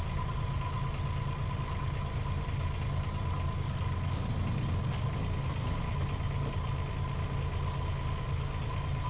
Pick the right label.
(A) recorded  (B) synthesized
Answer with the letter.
A